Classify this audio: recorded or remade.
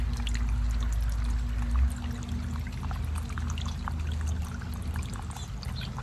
recorded